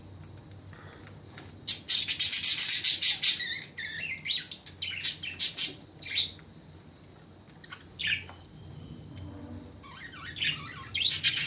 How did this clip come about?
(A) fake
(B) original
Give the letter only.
B